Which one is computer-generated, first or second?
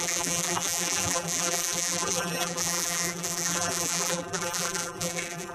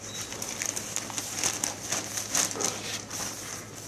first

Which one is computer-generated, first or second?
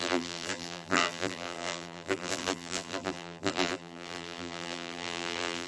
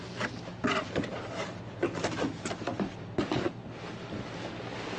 first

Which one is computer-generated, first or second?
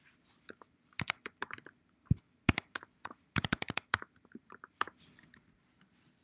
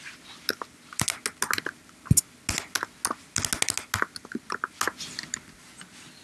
first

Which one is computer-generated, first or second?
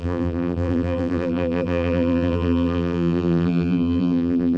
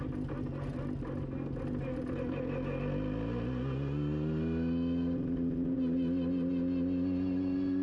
first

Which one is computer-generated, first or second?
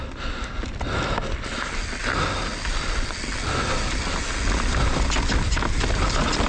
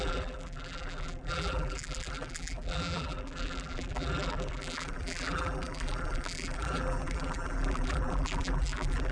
second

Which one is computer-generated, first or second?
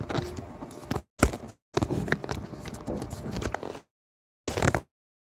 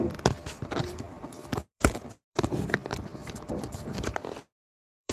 second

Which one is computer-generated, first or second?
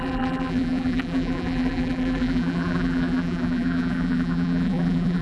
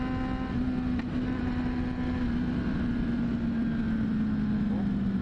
first